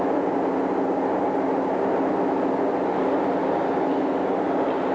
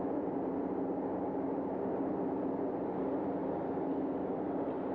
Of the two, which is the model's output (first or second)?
second